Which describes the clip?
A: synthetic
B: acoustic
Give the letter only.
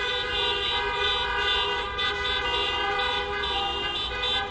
B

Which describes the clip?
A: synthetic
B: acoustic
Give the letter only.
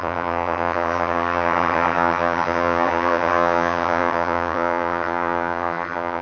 A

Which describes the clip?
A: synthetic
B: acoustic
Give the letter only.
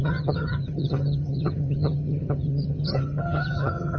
A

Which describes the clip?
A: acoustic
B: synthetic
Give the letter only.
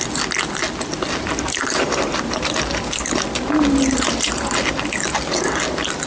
A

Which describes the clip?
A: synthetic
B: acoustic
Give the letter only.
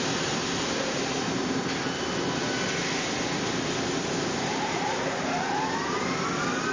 B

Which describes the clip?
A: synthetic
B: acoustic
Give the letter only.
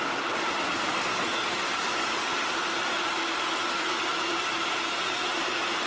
B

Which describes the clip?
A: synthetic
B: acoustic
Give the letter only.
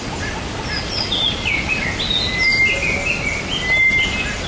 B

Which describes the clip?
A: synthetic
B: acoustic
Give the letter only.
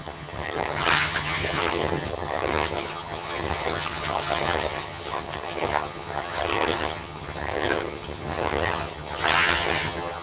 A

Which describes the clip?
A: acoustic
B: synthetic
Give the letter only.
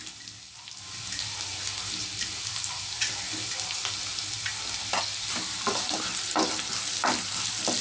A